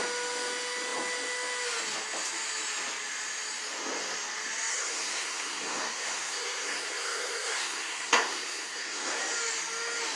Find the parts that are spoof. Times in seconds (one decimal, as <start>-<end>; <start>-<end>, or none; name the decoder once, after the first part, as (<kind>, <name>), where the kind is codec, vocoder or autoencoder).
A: 4.7-9.2 (codec, SNAC)